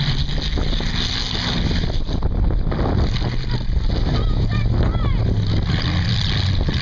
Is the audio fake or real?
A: real